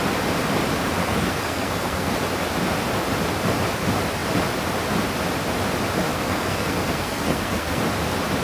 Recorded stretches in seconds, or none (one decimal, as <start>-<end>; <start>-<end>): 0.0-1.0; 2.1-6.1; 7.8-8.4